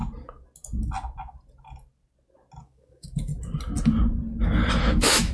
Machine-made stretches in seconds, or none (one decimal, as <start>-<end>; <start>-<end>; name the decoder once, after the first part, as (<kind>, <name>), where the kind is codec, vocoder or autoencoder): 2.6-3.3 (autoencoder, DAC-VAE); 4.7-5.3

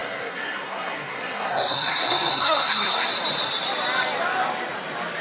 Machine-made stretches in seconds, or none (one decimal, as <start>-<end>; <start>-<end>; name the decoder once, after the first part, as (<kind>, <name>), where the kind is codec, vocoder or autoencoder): 0.0-3.1 (codec, SNAC)

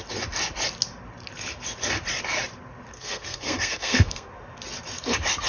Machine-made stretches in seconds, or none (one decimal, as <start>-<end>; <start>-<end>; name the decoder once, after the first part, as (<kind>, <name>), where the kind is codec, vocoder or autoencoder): 2.9-4.3 (codec, SNAC)

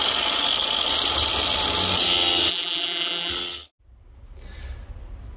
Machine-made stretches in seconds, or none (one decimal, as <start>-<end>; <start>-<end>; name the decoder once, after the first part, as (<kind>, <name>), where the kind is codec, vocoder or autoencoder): 2.5-3.3 (vocoder, BigVGAN v2)

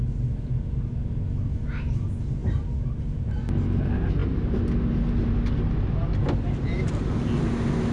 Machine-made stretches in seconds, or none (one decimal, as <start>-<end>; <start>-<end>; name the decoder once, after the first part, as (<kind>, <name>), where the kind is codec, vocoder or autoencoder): 6.0-7.2 (vocoder, BigVGAN v2)

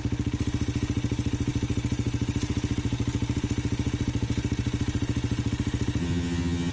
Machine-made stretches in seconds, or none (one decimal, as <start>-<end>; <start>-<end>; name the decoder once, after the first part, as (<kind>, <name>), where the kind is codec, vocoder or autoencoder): 6.0-6.7 (vocoder, HiFi-GAN)

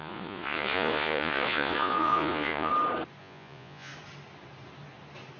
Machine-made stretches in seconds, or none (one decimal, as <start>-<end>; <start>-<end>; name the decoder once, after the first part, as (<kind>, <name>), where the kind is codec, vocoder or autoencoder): 0.0-2.7 (vocoder, Vocos); 3.2-3.9